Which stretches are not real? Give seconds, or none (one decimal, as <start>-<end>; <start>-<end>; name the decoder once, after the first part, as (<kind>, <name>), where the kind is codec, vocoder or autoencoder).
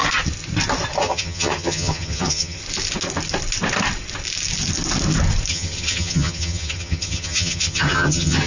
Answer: 1.0-2.6 (vocoder, HiFi-GAN); 5.5-8.5